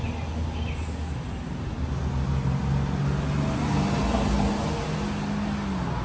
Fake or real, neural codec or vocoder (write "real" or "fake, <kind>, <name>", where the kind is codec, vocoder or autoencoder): real